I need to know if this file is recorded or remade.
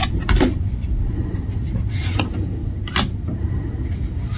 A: recorded